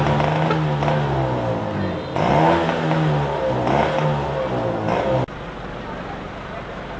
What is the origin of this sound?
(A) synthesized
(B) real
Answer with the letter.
B